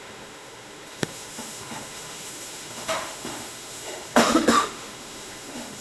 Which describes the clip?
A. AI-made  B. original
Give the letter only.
A